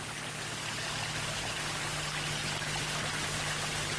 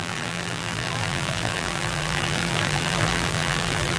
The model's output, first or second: second